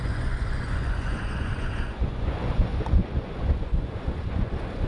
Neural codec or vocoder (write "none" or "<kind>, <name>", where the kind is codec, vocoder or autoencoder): vocoder, Vocos